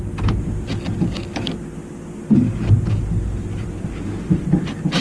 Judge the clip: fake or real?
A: real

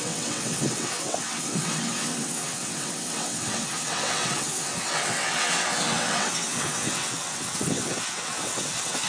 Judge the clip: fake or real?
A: fake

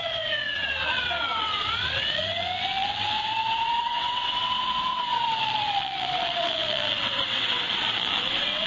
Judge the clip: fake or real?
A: fake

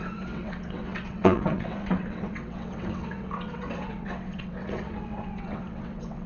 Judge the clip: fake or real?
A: fake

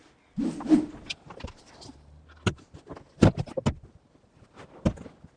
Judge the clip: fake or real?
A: real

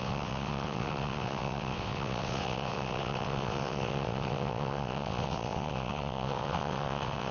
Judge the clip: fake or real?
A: fake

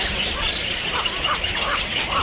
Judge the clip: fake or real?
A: real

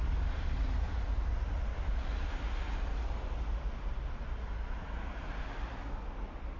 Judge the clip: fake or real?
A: real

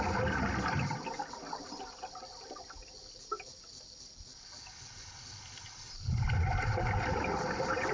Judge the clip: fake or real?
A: real